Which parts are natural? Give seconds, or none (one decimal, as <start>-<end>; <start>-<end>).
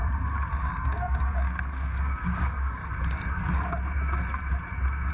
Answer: 0.0-0.7; 2.8-5.1